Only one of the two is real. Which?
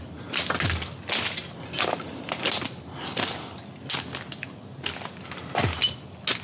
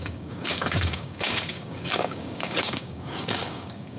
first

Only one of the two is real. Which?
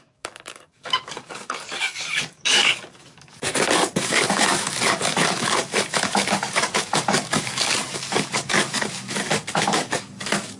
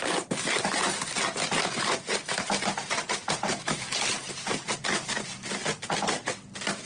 second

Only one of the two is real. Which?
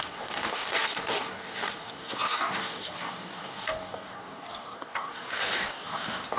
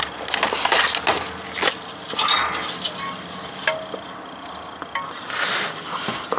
second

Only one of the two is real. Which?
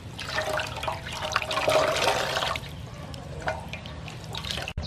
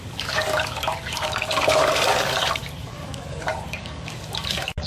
first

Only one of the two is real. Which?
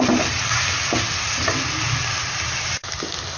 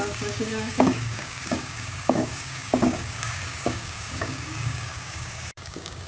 first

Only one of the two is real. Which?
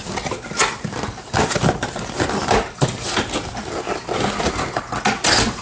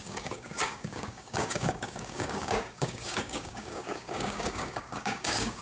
first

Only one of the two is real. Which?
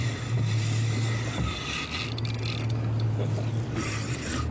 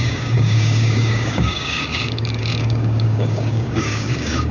first